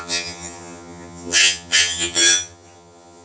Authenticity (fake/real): fake